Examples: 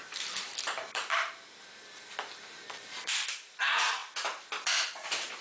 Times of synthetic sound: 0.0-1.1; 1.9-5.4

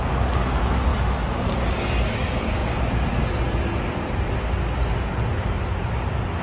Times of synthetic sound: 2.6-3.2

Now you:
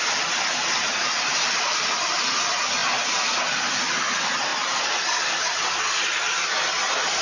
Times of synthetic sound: 1.3-2.2

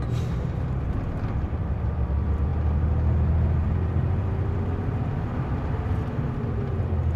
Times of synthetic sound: none

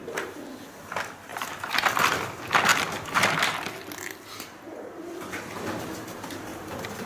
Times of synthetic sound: 1.3-2.0; 2.7-3.2; 6.5-7.1

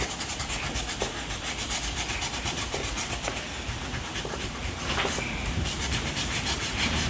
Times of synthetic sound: 4.6-7.1

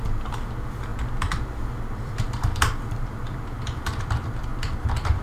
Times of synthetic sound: 0.0-5.2